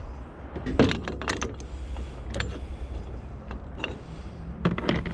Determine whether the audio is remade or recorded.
recorded